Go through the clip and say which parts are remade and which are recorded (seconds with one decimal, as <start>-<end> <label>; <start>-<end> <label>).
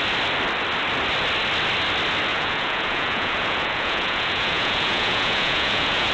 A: 0.0-2.3 recorded; 2.3-6.1 remade